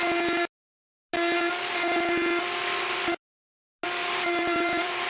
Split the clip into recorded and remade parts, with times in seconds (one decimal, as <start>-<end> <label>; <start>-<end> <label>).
0.0-4.0 recorded; 4.0-5.1 remade